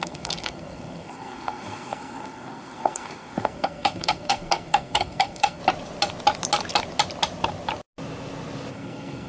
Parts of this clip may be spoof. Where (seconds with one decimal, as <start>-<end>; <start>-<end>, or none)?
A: 0.0-5.6; 8.7-9.3